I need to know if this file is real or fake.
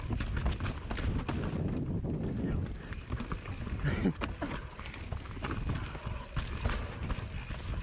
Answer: real